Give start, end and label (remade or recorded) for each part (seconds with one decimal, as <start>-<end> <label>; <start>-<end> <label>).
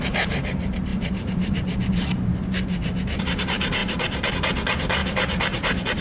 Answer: 0.0-6.0 remade